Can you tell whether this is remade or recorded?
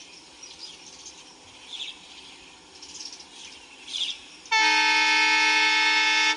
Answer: recorded